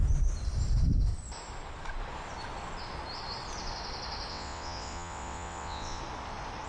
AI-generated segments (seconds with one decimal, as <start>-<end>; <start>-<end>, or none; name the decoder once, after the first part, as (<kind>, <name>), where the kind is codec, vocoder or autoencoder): 4.3-6.0 (vocoder, WaveNeXt)